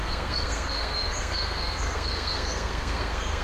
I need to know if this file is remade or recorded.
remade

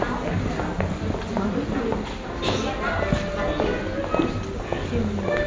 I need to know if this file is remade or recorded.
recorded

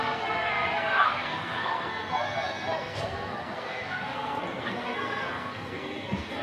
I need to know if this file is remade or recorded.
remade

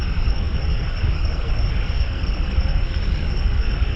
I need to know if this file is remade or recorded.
remade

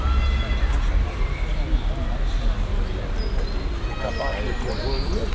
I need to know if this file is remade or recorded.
recorded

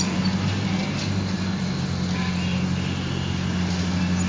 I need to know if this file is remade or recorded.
recorded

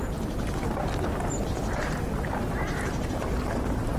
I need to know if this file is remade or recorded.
recorded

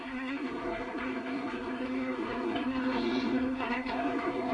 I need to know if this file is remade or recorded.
remade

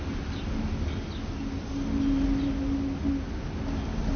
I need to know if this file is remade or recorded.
recorded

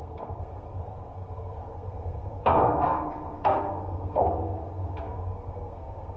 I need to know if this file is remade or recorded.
remade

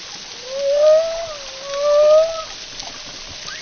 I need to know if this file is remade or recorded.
recorded